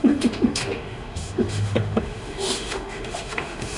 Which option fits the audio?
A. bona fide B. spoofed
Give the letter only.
B